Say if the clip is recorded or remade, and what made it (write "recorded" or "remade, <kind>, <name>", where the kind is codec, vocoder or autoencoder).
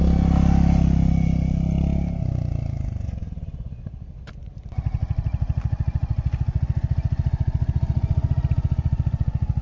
recorded